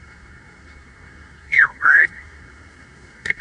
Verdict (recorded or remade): remade